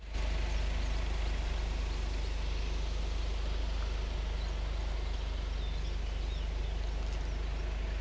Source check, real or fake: real